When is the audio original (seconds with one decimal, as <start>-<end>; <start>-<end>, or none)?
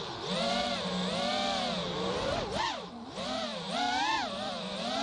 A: 0.0-5.0